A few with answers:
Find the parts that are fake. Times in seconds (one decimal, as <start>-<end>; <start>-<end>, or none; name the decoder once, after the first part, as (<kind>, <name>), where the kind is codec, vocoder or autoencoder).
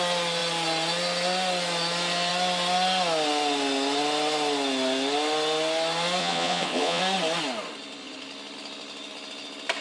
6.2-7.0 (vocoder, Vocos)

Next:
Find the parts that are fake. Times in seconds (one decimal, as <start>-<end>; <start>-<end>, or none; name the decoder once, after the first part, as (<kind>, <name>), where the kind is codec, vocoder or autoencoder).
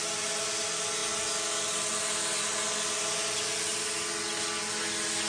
none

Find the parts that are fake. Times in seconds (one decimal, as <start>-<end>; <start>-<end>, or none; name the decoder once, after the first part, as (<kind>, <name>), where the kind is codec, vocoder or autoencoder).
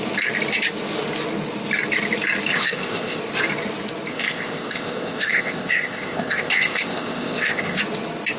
2.5-3.2 (codec, ZipCodec); 4.1-7.8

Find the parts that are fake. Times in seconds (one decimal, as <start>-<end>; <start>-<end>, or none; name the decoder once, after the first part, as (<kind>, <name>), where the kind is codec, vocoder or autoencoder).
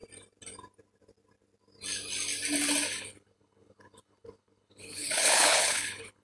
3.0-6.2 (codec, HILCodec)